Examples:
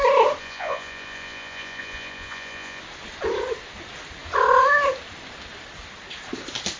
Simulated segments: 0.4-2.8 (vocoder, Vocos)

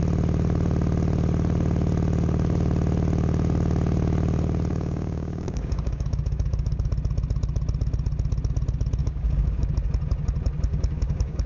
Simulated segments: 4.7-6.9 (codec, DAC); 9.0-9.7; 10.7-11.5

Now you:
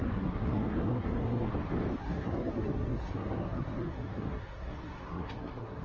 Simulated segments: 0.0-1.5 (codec, SNAC); 2.0-5.8

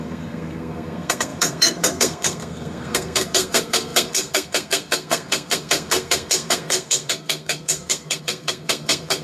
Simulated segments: 0.0-9.2 (codec, SNAC)

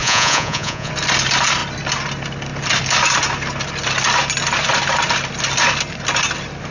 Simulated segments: 0.0-0.9 (vocoder, Vocos)